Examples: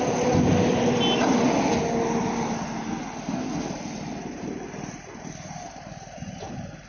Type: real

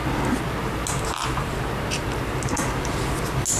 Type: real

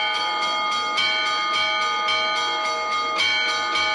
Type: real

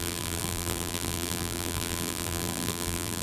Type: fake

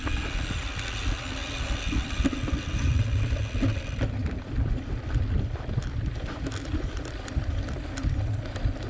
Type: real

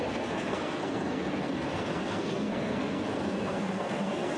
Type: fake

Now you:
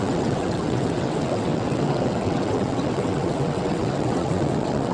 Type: fake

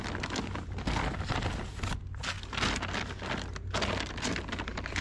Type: real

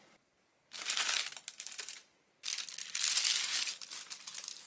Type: real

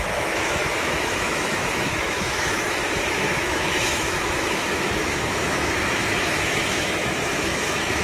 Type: fake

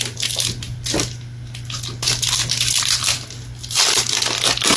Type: real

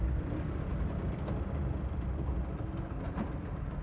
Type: fake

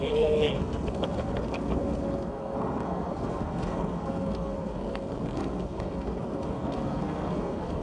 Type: fake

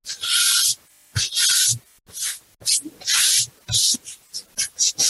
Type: real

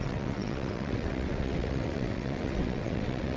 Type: fake